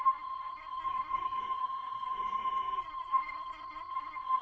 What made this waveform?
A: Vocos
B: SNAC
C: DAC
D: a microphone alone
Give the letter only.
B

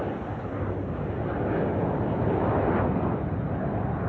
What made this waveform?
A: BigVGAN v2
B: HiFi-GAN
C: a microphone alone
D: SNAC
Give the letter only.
C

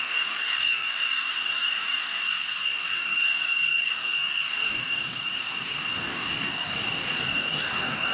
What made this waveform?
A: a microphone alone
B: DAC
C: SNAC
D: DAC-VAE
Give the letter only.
B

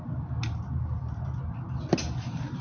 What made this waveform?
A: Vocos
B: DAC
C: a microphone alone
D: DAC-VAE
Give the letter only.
C